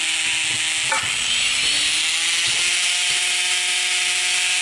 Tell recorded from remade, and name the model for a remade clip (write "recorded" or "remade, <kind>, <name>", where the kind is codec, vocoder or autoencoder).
recorded